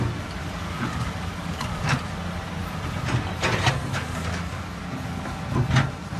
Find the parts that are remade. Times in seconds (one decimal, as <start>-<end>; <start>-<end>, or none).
0.4-1.8; 3.9-5.4

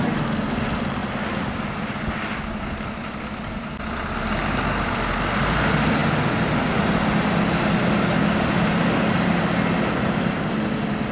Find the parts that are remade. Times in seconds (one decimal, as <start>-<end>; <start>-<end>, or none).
none

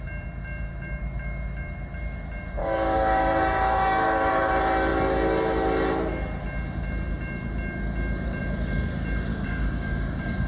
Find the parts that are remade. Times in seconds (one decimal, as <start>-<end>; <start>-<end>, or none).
2.6-4.5; 9.3-10.5

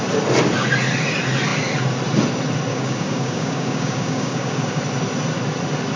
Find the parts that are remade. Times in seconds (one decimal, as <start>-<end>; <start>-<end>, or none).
2.7-4.8

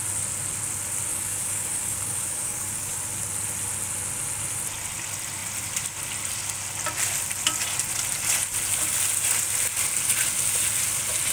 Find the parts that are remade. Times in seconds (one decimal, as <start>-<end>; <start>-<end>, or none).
1.1-3.0